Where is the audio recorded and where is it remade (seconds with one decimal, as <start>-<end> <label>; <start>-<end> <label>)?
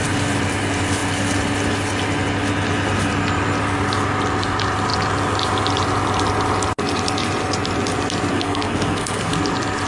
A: 0.0-8.3 recorded; 8.3-9.3 remade; 9.3-9.9 recorded